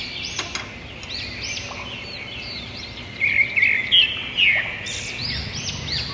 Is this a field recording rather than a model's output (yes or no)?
yes